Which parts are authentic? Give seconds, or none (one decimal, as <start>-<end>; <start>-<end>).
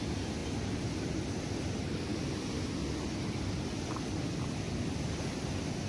0.0-5.9